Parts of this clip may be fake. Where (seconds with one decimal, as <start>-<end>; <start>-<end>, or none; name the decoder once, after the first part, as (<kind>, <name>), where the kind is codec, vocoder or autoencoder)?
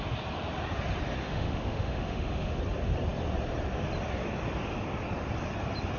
1.2-2.6 (autoencoder, DAC-VAE)